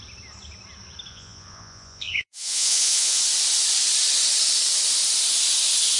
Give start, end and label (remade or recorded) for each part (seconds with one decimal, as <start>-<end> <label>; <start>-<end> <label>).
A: 0.0-1.1 recorded; 1.1-3.2 remade; 3.2-6.0 recorded

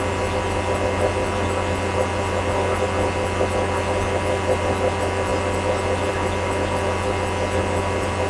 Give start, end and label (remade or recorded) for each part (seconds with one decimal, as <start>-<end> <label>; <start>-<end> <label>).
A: 0.0-8.3 recorded